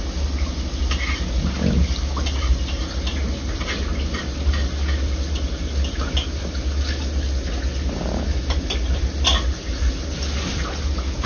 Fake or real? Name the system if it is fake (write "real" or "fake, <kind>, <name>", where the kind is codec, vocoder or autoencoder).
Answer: real